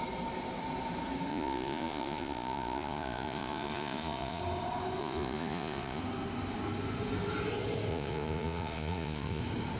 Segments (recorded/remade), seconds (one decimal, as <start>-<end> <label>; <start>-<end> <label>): 0.0-1.3 recorded; 1.3-4.4 remade; 4.4-5.0 recorded; 5.0-6.0 remade; 6.0-7.9 recorded; 7.9-9.4 remade; 9.4-9.8 recorded